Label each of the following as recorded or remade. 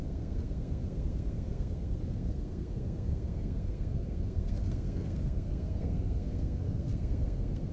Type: remade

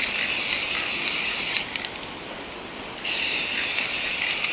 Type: recorded